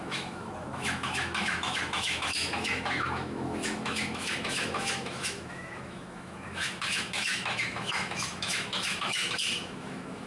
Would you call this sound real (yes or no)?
no